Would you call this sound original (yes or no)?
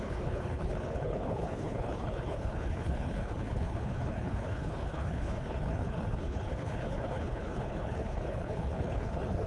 no